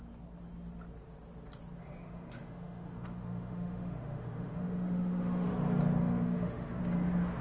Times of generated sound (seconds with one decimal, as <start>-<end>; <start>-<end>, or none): 1.8-5.5; 6.0-6.8